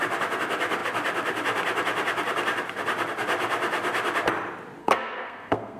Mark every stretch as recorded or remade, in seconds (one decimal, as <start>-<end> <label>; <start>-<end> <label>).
0.0-4.8 recorded; 4.8-5.8 remade